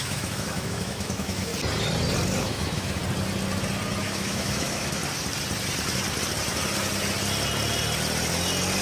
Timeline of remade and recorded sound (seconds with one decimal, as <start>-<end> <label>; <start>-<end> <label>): 0.0-1.5 remade; 1.5-2.4 recorded; 2.4-3.0 remade; 3.0-4.0 recorded; 4.0-5.0 remade; 5.0-8.8 recorded